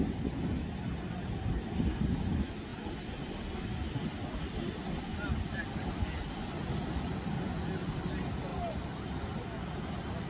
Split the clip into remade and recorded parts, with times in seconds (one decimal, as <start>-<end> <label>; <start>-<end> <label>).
0.0-10.3 recorded